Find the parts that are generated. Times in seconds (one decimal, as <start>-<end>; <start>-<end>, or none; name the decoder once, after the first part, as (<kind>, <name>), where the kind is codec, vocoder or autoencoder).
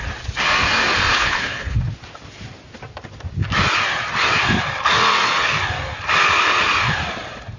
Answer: 1.1-1.8 (codec, HILCodec)